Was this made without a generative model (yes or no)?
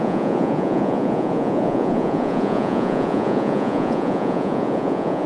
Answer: no